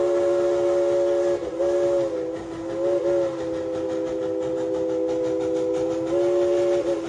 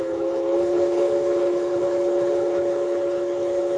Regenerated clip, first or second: second